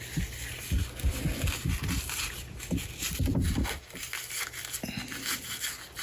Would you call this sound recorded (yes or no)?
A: yes